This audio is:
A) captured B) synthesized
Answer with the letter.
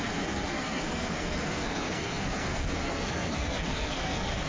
B